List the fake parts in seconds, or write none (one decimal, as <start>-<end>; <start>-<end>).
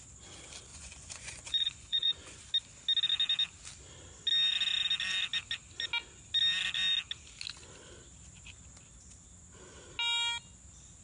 0.7-2.4